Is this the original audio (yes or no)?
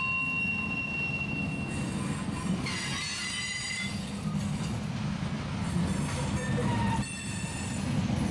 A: yes